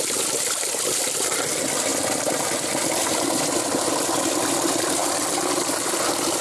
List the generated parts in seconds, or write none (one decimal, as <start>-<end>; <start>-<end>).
none